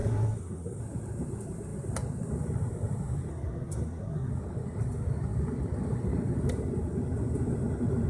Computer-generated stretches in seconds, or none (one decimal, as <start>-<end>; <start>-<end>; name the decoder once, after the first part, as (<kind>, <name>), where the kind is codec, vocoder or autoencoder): 0.0-0.8 (codec, SNAC); 3.3-4.3